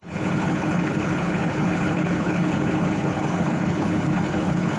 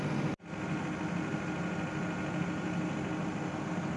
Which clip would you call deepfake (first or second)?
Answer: first